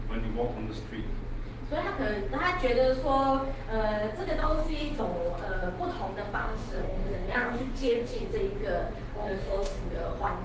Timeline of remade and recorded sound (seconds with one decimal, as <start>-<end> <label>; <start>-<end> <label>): 0.0-4.4 recorded; 4.4-5.0 remade; 5.0-6.4 recorded; 6.4-8.3 remade; 8.3-9.1 recorded; 9.1-9.9 remade; 9.9-10.4 recorded